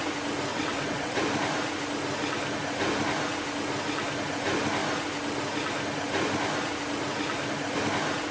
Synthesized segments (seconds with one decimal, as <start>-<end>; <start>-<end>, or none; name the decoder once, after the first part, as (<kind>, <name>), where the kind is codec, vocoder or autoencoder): 0.5-1.2 (vocoder, WaveNeXt)